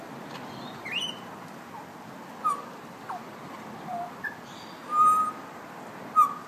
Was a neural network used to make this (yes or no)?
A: no